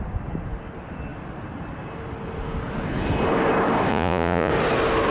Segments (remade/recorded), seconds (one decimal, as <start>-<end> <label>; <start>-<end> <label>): 0.0-3.9 recorded; 3.9-4.5 remade; 4.5-5.1 recorded